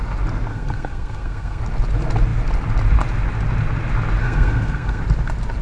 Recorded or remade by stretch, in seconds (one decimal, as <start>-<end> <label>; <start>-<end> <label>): 0.0-0.5 recorded; 0.5-1.6 remade; 1.6-4.2 recorded; 4.2-5.0 remade; 5.0-5.6 recorded